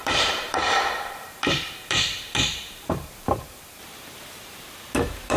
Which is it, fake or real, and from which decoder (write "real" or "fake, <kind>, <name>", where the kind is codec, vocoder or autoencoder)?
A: fake, vocoder, BigVGAN v2